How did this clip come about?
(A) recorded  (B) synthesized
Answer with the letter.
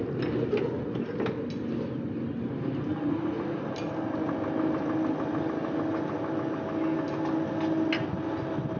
A